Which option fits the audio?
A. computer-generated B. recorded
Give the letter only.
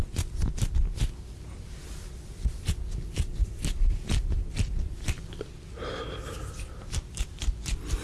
B